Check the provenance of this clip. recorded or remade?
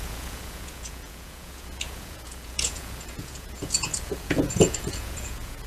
remade